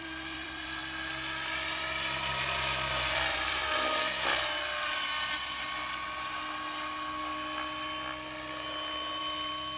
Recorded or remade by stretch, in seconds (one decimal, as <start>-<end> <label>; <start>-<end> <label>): 0.0-0.8 remade; 0.8-2.3 recorded; 2.3-5.1 remade; 5.1-9.2 recorded; 9.2-9.8 remade